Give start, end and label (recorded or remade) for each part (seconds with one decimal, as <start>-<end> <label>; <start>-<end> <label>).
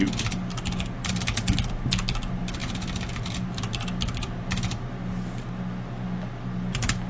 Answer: 0.0-7.1 recorded